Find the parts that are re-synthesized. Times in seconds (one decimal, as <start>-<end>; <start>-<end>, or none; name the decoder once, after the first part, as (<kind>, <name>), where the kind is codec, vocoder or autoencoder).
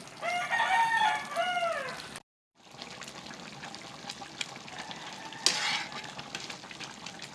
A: none